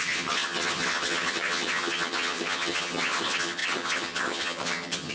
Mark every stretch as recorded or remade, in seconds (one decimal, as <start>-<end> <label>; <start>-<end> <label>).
0.0-5.1 remade